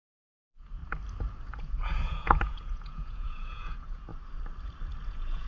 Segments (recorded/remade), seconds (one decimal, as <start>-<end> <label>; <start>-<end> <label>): 0.0-0.8 remade; 0.8-1.5 recorded; 1.5-4.1 remade; 4.1-5.1 recorded; 5.1-5.5 remade